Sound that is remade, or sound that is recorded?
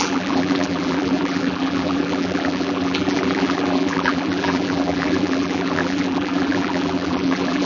remade